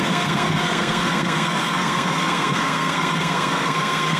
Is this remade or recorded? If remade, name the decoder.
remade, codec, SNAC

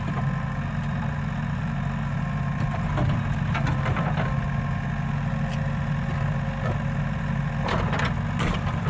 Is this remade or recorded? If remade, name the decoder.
recorded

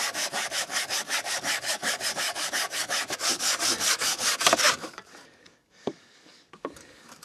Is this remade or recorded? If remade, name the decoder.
remade, codec, DAC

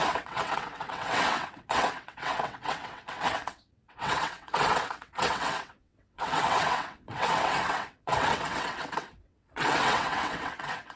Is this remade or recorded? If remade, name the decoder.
remade, vocoder, WaveNeXt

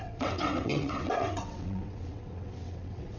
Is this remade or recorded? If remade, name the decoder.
remade, vocoder, WaveNeXt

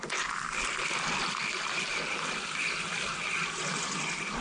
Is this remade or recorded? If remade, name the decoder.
recorded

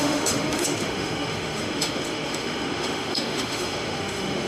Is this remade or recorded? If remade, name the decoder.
remade, autoencoder, DAC-VAE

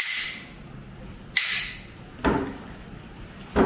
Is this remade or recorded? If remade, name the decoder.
remade, vocoder, BigVGAN v2